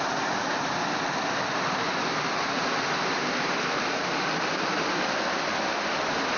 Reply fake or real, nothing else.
real